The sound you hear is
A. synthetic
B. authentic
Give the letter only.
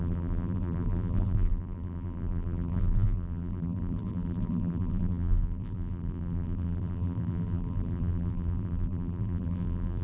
A